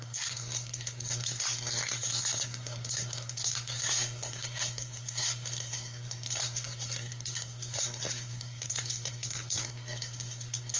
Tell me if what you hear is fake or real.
fake